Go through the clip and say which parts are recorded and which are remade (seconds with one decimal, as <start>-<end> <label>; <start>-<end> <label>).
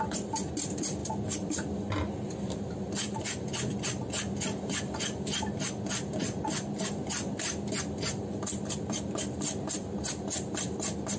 0.0-11.2 recorded